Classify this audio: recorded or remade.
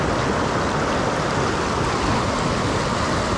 recorded